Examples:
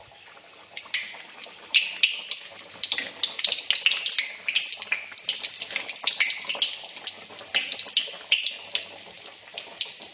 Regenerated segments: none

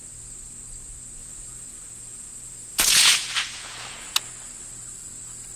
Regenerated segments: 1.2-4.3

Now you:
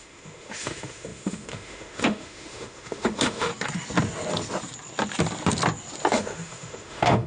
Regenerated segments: 0.0-3.5; 6.1-7.3